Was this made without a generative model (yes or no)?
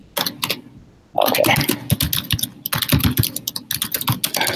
yes